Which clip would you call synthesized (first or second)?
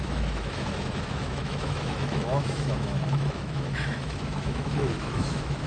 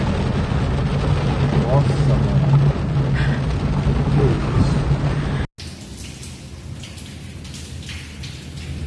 first